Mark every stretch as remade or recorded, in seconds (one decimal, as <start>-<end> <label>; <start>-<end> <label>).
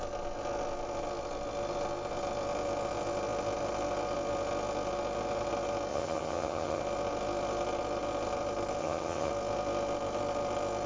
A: 0.0-5.9 recorded; 5.9-6.8 remade; 6.8-8.8 recorded; 8.8-9.3 remade; 9.3-10.9 recorded